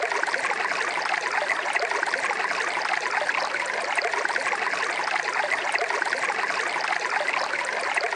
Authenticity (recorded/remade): recorded